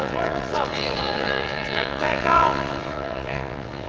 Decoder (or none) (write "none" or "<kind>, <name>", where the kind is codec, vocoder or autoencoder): vocoder, WaveNeXt